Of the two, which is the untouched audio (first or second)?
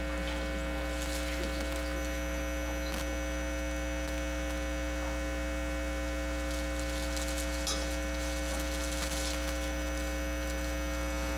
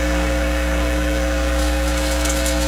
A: first